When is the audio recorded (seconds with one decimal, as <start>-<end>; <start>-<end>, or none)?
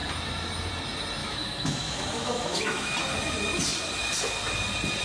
0.0-1.2; 2.9-5.0